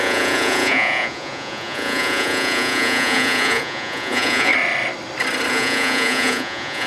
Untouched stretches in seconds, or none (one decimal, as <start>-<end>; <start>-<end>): 4.5-5.5